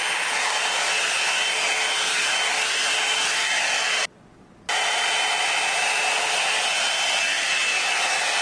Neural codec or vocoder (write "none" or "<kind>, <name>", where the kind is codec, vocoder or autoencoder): none